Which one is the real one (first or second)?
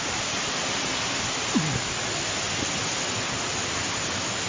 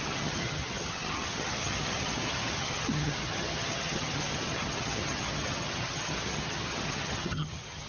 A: first